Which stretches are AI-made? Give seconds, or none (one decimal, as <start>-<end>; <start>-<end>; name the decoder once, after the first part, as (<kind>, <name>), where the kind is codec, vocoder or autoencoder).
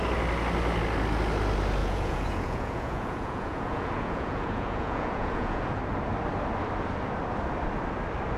1.8-5.8 (vocoder, Vocos)